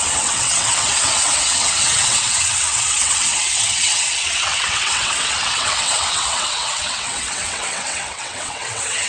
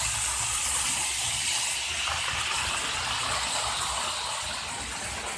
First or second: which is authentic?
second